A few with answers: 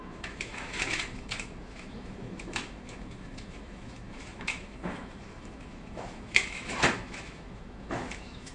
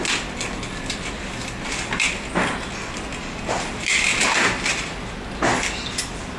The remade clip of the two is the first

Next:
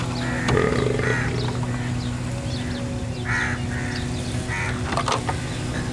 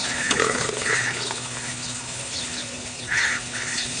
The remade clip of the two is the second